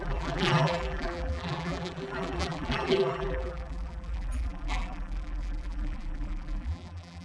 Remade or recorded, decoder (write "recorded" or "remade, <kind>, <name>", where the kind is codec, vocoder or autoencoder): remade, vocoder, BigVGAN v2